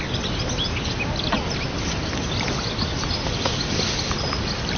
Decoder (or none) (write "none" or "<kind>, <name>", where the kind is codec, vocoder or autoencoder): none